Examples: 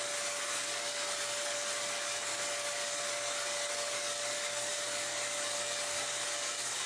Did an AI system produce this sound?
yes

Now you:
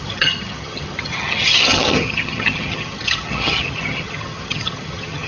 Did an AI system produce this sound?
yes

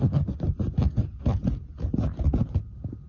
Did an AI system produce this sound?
no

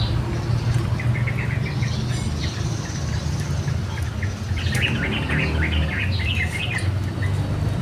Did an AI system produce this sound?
no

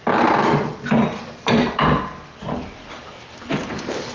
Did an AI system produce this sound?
yes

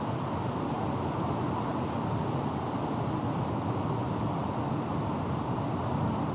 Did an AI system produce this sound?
no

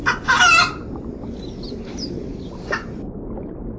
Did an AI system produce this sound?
no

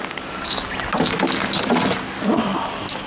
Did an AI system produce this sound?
no